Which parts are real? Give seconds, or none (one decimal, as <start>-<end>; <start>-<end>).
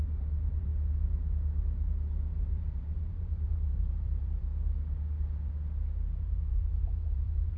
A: 0.7-2.3; 4.5-6.2